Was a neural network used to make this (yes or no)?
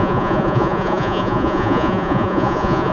yes